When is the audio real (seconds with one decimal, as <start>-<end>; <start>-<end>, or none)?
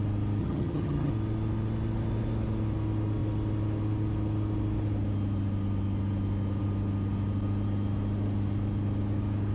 0.0-0.4; 1.1-9.5